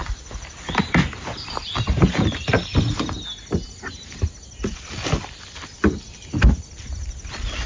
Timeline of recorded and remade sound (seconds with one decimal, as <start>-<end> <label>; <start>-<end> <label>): 0.0-1.9 remade; 1.9-7.7 recorded